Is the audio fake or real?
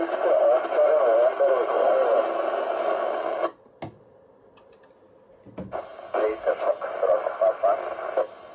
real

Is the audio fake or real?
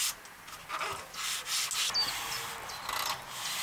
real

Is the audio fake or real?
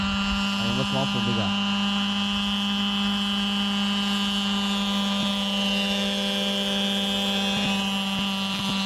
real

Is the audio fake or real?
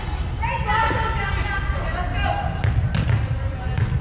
real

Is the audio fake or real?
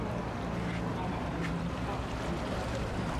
real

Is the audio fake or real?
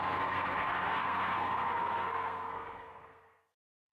fake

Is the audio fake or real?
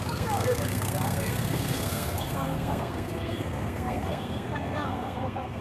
fake